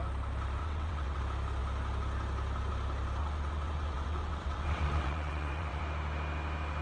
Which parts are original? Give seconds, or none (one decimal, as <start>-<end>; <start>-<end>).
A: 0.0-0.6; 1.2-3.2; 5.8-6.8